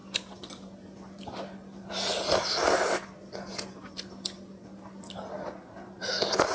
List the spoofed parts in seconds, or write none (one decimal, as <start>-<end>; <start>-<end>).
none